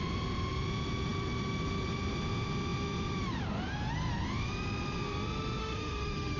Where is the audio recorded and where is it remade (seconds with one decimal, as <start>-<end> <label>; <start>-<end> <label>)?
0.0-5.6 recorded; 5.6-6.4 remade